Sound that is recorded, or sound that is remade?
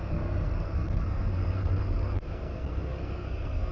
remade